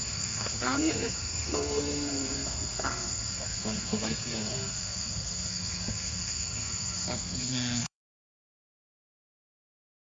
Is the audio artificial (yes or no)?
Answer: yes